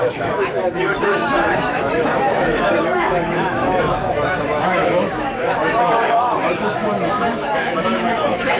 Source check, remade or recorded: remade